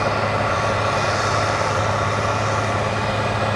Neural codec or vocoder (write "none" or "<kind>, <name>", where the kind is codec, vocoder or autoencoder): none